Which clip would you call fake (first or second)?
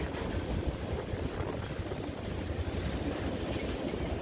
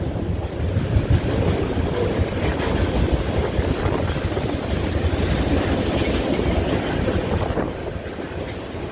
first